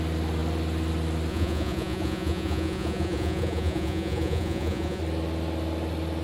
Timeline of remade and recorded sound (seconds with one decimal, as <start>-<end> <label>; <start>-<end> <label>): 0.0-1.3 recorded; 1.3-5.0 remade; 5.0-6.2 recorded

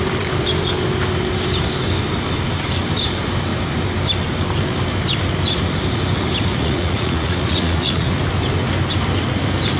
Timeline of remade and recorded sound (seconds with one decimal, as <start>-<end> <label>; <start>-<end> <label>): 0.0-6.5 recorded; 6.5-8.1 remade; 8.1-9.8 recorded